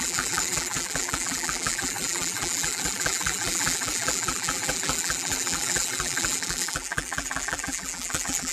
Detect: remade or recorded remade